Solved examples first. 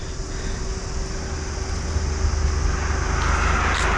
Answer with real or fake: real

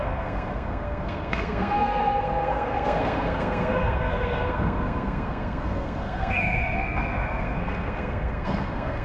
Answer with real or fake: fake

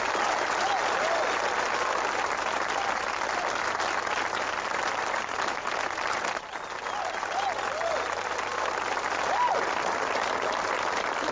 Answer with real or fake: real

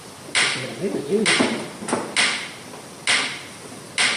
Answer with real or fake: real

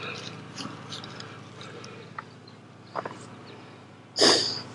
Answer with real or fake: real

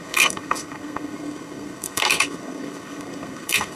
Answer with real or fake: fake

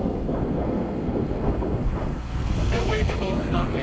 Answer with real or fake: fake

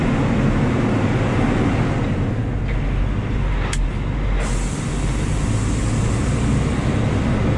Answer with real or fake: real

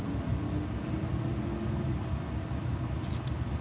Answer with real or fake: real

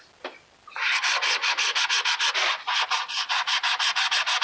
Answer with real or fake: real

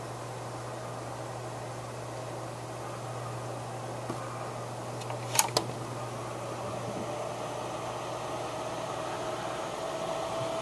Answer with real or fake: real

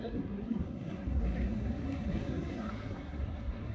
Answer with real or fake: fake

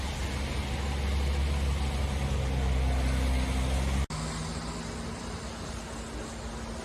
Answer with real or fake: real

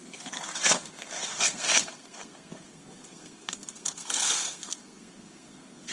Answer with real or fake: fake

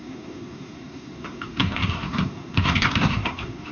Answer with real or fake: fake